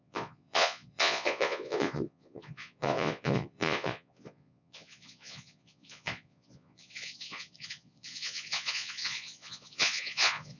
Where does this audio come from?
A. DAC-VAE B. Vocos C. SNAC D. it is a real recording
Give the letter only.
B